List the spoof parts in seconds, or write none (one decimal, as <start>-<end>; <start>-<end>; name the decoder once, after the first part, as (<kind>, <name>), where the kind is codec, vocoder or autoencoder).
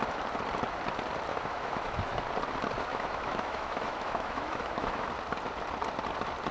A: 1.3-2.2 (autoencoder, DAC-VAE); 2.9-5.1